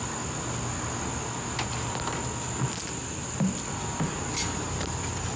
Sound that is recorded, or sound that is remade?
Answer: recorded